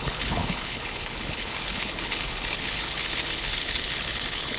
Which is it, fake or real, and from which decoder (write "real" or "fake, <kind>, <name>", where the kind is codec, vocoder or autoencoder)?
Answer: fake, codec, HILCodec